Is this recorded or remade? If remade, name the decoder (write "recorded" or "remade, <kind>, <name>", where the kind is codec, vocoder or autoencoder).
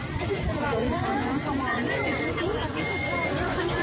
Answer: remade, vocoder, Vocos